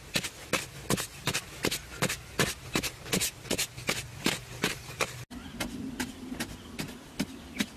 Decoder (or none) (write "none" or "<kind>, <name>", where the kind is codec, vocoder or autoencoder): none